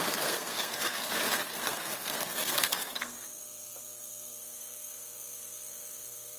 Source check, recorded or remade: remade